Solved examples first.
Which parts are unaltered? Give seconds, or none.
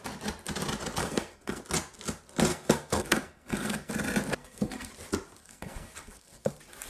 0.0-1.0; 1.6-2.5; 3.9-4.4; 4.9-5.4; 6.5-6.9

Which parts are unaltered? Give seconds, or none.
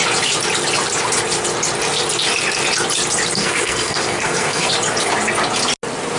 0.0-3.4; 4.7-6.2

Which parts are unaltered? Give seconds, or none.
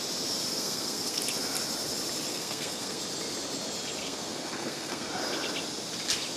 0.0-0.5; 1.2-2.3; 3.0-4.0; 5.1-6.4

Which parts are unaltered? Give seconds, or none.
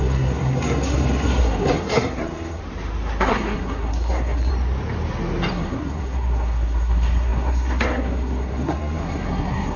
2.6-3.2; 4.5-5.5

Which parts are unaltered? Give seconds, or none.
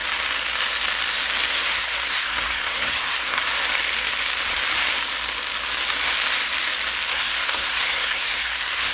0.0-1.5; 3.4-7.1